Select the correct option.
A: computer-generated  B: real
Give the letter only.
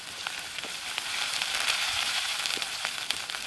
A